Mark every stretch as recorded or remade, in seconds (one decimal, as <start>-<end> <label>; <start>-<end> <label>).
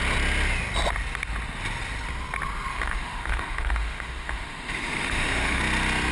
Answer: 0.0-2.7 recorded; 2.7-5.6 remade; 5.6-6.1 recorded